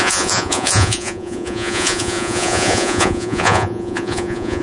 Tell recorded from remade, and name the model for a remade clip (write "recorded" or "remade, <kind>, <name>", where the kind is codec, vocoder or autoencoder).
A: remade, vocoder, Vocos